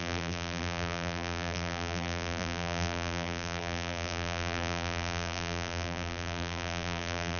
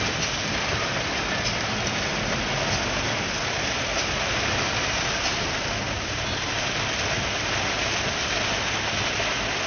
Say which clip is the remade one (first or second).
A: first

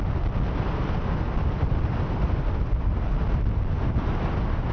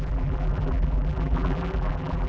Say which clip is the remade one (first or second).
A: second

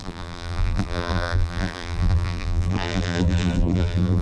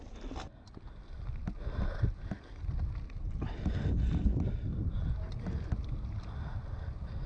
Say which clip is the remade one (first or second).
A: first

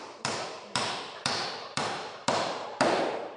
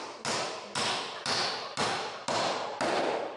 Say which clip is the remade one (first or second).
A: first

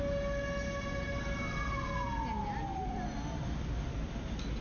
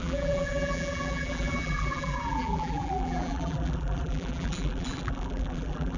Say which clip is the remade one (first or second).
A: second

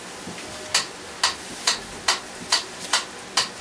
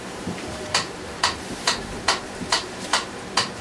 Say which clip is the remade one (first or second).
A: second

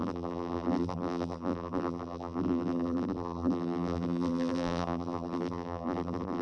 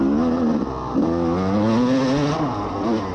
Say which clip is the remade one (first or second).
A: first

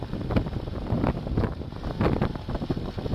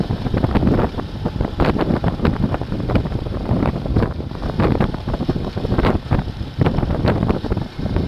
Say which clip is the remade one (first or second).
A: second